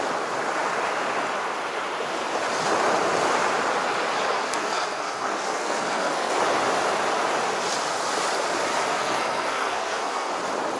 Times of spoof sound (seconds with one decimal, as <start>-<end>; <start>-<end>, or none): 4.3-6.4; 9.0-10.3